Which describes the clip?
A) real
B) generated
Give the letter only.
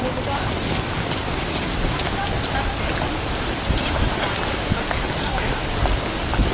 A